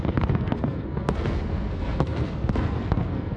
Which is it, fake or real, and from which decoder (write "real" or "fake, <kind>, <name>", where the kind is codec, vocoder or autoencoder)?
fake, codec, SNAC